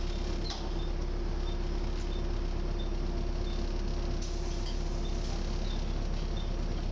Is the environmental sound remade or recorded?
recorded